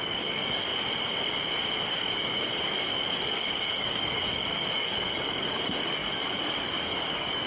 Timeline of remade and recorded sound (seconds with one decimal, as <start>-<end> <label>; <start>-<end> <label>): 0.0-0.7 remade; 0.7-1.8 recorded; 1.8-7.5 remade